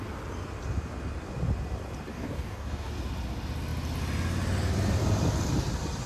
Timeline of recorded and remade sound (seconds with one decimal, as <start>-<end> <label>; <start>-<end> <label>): 0.0-2.1 recorded; 2.1-2.9 remade; 2.9-6.1 recorded